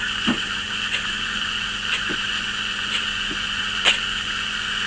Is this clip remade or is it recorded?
remade